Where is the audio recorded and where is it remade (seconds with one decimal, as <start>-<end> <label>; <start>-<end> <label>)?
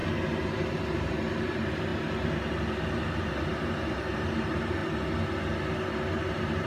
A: 0.0-4.8 remade; 4.8-6.3 recorded; 6.3-6.7 remade